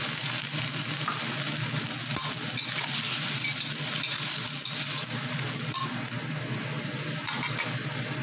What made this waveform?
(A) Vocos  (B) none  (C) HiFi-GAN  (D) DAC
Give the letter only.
B